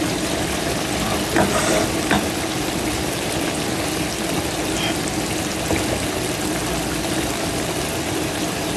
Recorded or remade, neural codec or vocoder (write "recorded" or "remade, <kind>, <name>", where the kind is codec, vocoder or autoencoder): recorded